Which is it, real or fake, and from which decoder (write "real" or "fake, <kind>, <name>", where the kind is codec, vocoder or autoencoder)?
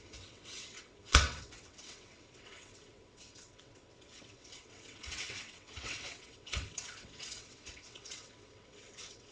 fake, vocoder, WaveNeXt